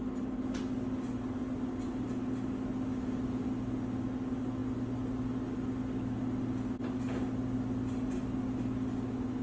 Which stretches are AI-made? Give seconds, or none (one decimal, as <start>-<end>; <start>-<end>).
none